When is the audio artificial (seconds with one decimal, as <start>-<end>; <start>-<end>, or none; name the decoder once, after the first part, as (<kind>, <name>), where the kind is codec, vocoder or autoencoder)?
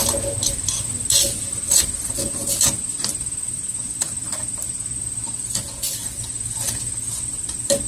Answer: none